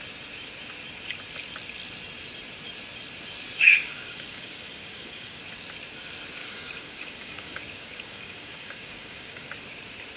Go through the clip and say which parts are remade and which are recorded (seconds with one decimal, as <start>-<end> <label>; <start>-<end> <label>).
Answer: 0.0-3.6 recorded; 3.6-5.4 remade; 5.4-6.4 recorded; 6.4-9.5 remade; 9.5-10.2 recorded